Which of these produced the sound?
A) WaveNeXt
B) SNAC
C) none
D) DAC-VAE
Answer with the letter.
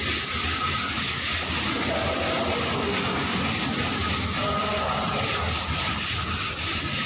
C